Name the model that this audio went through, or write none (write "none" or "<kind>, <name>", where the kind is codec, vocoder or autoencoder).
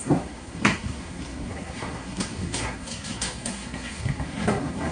codec, SNAC